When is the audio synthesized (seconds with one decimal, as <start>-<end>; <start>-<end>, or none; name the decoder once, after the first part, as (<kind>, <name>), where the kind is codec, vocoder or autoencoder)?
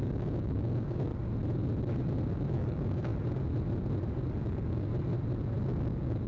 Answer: 0.0-1.1 (codec, DAC); 2.5-3.1; 4.4-4.9; 5.6-6.3